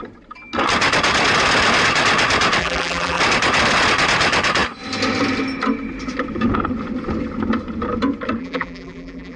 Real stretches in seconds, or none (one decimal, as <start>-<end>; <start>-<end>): 0.0-2.6; 3.2-8.4